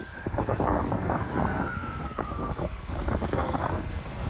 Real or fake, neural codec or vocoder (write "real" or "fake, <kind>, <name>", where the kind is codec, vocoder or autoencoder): fake, codec, SNAC